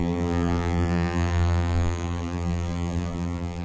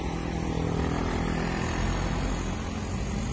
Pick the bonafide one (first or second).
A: second